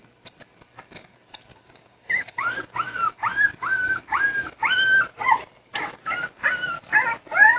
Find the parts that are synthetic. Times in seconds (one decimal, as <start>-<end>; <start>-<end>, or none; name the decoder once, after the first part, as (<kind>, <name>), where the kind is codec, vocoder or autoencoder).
1.5-2.5 (codec, DAC)